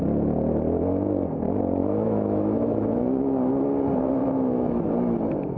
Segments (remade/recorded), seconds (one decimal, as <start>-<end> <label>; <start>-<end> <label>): 0.0-1.8 recorded; 1.8-3.5 remade; 3.5-4.2 recorded; 4.2-4.8 remade; 4.8-5.6 recorded